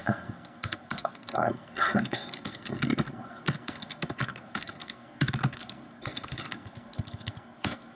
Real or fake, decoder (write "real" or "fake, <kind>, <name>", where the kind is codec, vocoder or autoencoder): fake, codec, SNAC